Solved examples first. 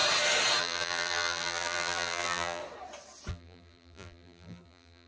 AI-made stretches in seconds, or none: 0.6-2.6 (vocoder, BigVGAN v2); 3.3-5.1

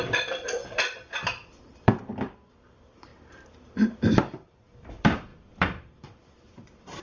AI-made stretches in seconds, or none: 0.0-3.1 (vocoder, BigVGAN v2); 4.1-7.0

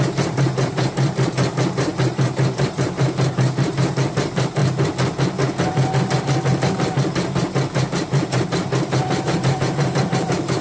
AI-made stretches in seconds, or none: 0.0-4.6 (vocoder, BigVGAN v2); 7.9-10.6

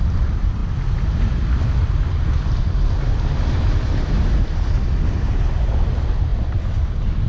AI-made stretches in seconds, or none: 0.0-6.3 (vocoder, BigVGAN v2)

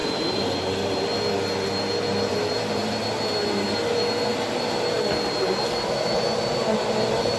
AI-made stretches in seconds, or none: 0.0-0.9 (vocoder, BigVGAN v2); 2.3-2.9

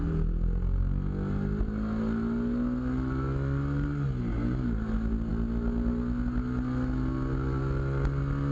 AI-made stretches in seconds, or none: none

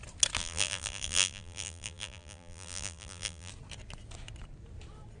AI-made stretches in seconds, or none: 0.4-3.5 (vocoder, BigVGAN v2)